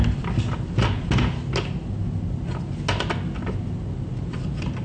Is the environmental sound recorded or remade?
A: recorded